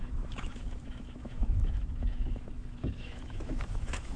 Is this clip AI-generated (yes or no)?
yes